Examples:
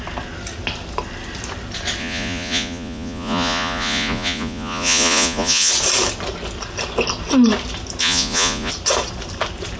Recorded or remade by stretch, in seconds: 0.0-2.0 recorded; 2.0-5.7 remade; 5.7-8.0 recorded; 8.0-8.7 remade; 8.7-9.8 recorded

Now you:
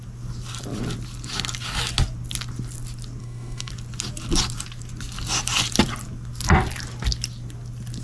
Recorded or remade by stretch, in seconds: 0.0-3.2 recorded; 3.2-3.7 remade; 3.7-8.0 recorded

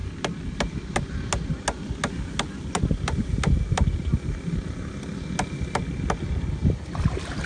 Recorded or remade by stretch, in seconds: 0.0-7.5 recorded

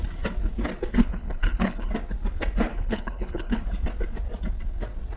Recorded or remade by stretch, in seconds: 0.0-1.0 recorded; 1.0-1.9 remade; 1.9-2.7 recorded; 2.7-3.6 remade; 3.6-5.2 recorded

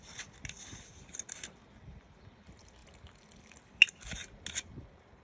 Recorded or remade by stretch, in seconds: 0.0-5.2 recorded

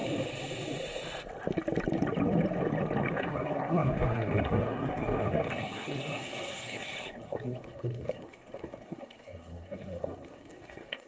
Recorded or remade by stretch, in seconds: 0.0-3.1 recorded; 3.1-11.1 remade